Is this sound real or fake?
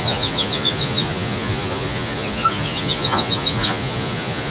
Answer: fake